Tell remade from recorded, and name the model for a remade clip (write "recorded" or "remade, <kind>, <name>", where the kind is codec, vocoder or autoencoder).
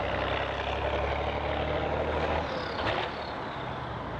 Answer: recorded